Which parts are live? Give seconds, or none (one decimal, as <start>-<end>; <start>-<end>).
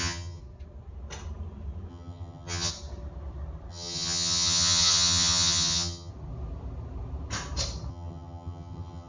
0.4-1.9; 2.7-3.7; 6.1-7.9